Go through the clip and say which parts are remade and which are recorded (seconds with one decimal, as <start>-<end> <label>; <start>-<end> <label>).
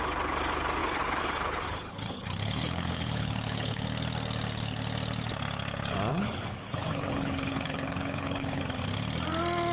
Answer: 0.0-0.8 recorded; 0.8-3.8 remade; 3.8-6.1 recorded; 6.1-8.6 remade; 8.6-9.7 recorded